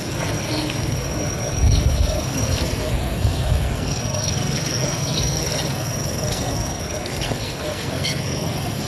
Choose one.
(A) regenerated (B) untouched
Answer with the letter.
A